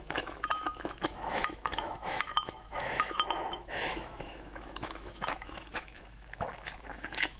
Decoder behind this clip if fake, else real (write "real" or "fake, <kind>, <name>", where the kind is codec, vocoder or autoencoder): fake, autoencoder, DAC-VAE